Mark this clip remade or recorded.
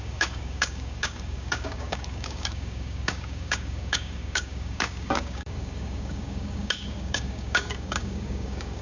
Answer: remade